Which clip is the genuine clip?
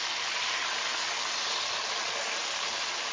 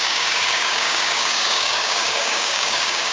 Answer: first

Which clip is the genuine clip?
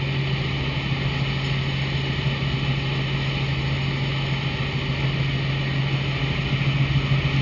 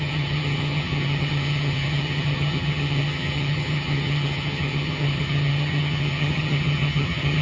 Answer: first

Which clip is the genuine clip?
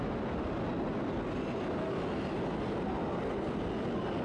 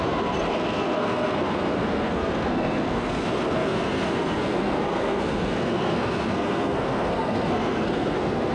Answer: first